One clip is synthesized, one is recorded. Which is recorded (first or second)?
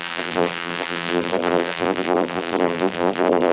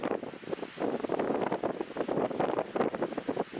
second